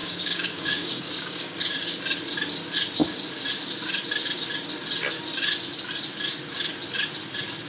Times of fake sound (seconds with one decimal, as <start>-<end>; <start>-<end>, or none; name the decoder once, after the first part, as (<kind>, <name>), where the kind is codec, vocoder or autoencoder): 0.0-2.0 (codec, DAC)